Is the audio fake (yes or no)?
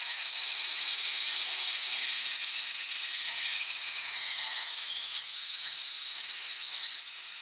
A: yes